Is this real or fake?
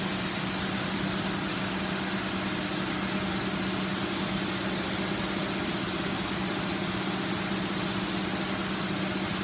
real